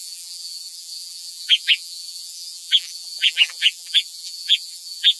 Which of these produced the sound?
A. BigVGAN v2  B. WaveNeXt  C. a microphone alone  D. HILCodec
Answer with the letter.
A